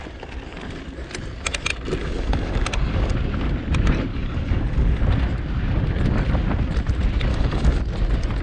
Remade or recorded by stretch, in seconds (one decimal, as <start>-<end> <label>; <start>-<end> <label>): 0.0-2.0 recorded; 2.0-3.1 remade; 3.1-4.1 recorded; 4.1-5.0 remade; 5.0-7.3 recorded; 7.3-7.8 remade; 7.8-8.4 recorded